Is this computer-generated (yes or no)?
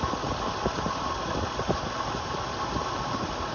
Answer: no